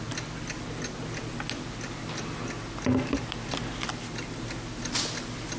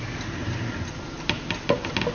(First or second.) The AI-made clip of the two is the second